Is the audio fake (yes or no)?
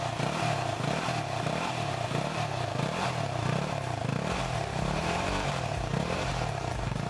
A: yes